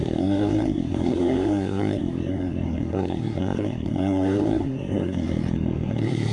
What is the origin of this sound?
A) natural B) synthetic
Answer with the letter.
B